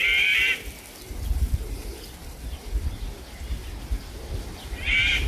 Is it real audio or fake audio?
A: fake